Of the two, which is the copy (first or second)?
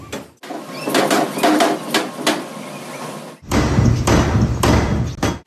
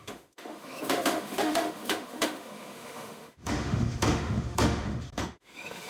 second